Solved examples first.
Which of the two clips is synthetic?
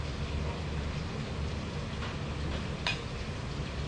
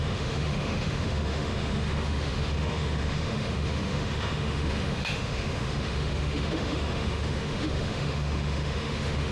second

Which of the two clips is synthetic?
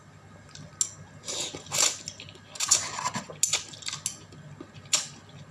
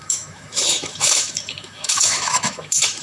second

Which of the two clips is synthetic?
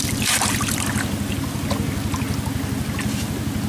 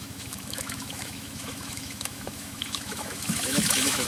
second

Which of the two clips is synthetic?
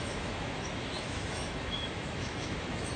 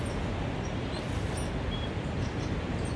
first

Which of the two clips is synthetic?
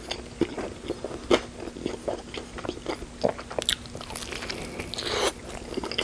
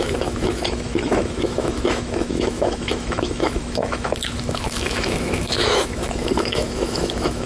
second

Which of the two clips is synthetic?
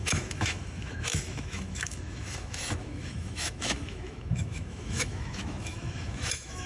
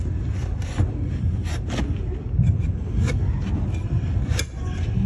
first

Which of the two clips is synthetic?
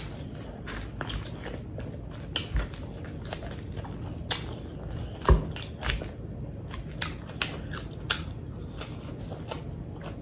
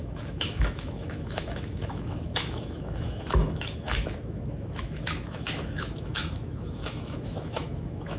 second